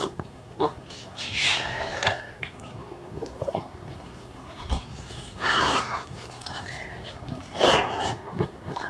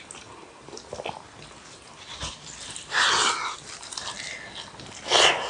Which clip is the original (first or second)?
second